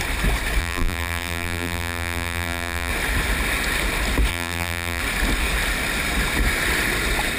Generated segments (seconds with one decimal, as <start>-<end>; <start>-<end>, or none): 0.6-2.9; 4.3-5.0